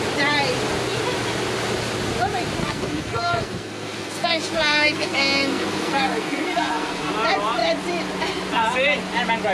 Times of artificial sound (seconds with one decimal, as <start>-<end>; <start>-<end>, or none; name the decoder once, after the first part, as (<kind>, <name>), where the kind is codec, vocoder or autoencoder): 2.6-7.1 (codec, SNAC)